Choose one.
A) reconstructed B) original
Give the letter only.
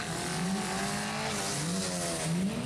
B